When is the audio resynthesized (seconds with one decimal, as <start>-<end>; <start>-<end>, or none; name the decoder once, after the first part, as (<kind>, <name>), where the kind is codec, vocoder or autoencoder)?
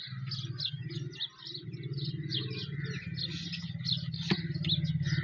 none